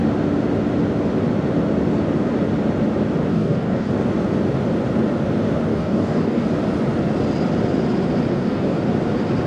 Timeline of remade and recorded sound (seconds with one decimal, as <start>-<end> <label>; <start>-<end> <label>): 0.0-3.3 recorded; 3.3-3.9 remade; 3.9-5.7 recorded; 5.7-6.4 remade; 6.4-8.3 recorded; 8.3-8.8 remade; 8.8-9.5 recorded